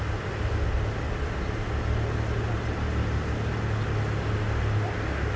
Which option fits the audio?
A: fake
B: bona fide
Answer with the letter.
B